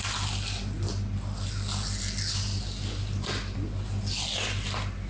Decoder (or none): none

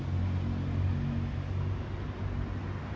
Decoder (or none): none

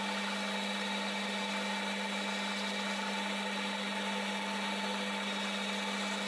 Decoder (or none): none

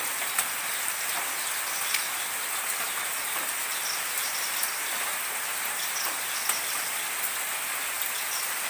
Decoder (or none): none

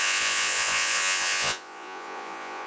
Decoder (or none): vocoder, Vocos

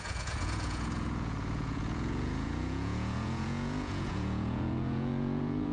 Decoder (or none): vocoder, Vocos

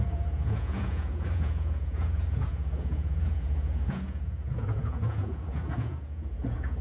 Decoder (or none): vocoder, Vocos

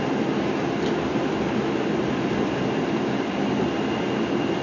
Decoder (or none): none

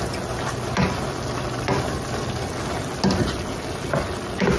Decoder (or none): none